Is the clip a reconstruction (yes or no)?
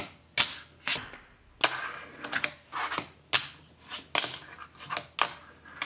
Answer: no